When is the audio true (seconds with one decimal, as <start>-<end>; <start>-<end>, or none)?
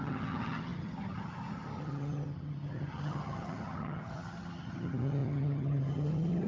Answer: none